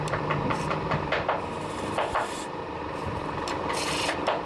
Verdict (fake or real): fake